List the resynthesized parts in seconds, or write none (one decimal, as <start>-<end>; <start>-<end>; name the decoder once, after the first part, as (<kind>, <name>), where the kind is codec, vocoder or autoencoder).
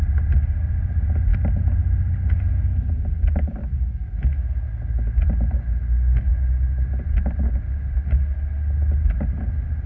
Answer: none